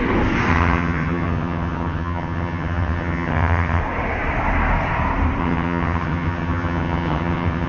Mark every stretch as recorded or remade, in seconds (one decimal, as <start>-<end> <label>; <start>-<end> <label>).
0.0-0.5 recorded; 0.5-3.8 remade; 3.8-5.4 recorded; 5.4-7.7 remade